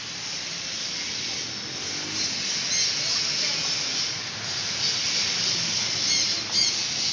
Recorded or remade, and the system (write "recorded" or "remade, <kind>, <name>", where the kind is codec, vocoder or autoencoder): recorded